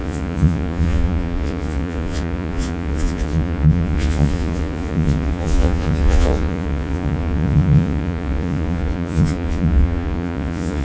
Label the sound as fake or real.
fake